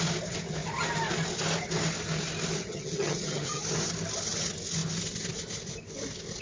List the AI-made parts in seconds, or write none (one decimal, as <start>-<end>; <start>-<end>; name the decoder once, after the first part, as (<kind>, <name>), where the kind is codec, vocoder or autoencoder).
2.7-3.6 (vocoder, HiFi-GAN)